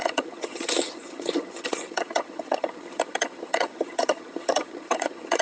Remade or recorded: remade